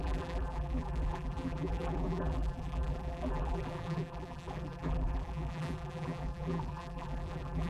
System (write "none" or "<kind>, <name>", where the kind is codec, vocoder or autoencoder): vocoder, BigVGAN v2